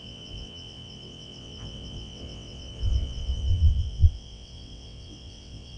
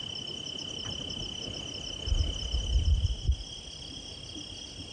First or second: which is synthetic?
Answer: first